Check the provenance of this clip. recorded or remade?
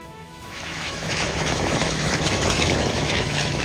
remade